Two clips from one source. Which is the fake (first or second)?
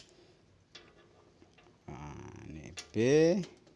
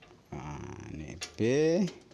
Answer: second